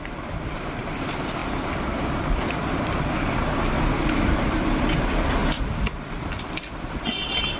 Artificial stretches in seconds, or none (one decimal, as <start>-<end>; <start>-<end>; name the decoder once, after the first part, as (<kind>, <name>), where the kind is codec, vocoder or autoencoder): 0.0-7.6 (vocoder, BigVGAN v2)